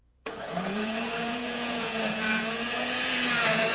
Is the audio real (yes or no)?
no